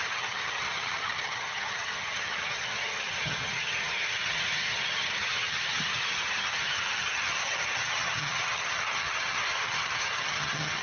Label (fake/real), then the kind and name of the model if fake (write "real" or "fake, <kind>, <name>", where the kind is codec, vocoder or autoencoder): fake, vocoder, HiFi-GAN